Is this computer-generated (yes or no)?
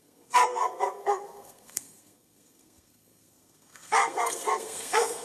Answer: yes